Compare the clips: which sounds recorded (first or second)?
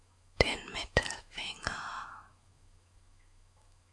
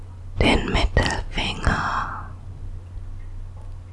second